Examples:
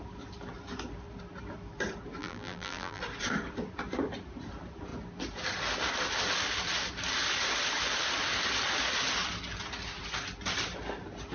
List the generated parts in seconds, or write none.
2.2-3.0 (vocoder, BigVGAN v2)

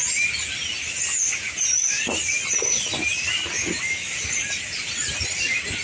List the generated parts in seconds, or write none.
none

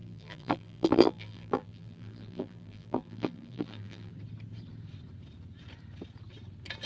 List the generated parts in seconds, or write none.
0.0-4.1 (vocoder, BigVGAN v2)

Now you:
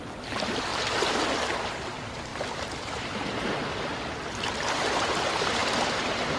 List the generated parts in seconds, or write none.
none